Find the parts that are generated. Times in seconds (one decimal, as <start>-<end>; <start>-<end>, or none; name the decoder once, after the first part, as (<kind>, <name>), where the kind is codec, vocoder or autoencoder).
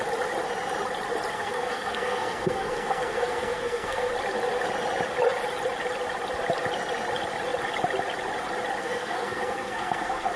1.3-4.1 (codec, SNAC); 8.8-10.4